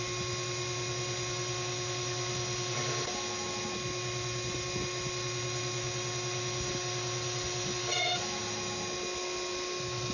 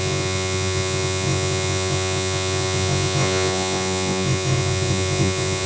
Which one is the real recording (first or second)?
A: first